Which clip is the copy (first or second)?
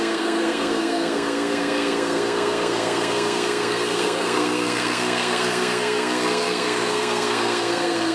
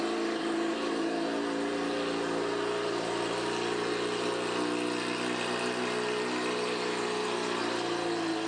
first